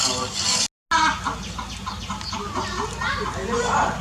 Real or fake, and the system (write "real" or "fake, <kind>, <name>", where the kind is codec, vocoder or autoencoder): real